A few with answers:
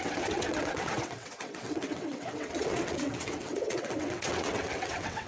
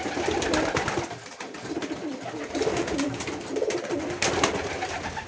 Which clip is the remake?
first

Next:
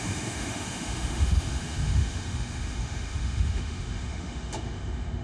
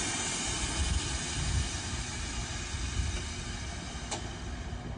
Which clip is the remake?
first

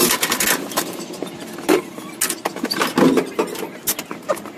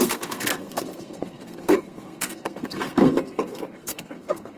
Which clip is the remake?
second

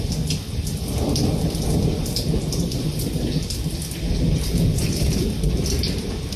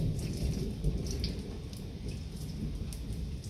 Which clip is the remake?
first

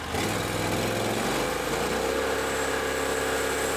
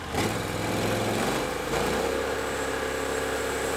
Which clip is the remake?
second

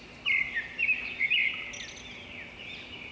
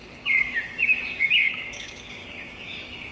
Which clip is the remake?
second